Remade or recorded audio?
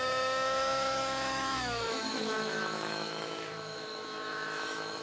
remade